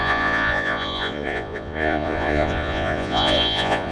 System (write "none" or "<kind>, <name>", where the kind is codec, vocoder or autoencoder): vocoder, Vocos